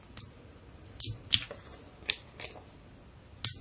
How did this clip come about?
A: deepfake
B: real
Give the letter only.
B